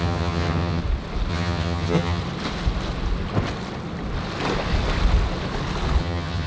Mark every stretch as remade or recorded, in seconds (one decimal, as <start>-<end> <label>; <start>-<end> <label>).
0.0-0.8 remade; 0.8-1.3 recorded; 1.3-2.2 remade; 2.2-6.0 recorded; 6.0-6.5 remade